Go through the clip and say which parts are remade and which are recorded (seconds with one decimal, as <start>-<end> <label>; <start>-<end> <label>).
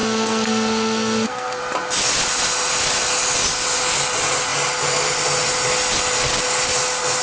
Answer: 0.0-1.6 remade; 1.6-7.2 recorded